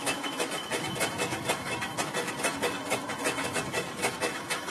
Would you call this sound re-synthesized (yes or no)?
yes